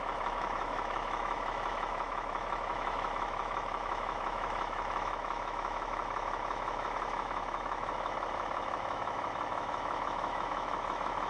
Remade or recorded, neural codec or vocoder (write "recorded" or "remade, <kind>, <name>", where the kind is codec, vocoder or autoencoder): remade, autoencoder, DAC-VAE